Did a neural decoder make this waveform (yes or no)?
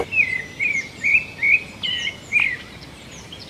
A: no